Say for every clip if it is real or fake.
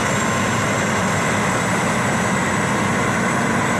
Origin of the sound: real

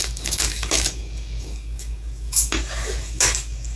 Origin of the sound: fake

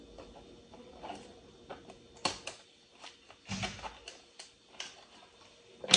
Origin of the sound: real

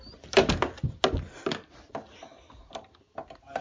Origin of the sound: real